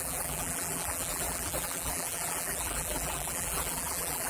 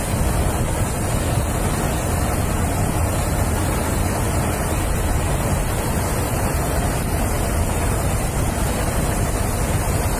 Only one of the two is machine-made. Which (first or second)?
first